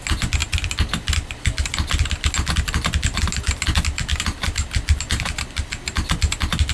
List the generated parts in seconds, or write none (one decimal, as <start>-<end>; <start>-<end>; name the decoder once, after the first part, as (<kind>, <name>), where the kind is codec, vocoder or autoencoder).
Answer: none